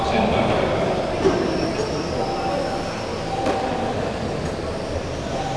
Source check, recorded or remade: recorded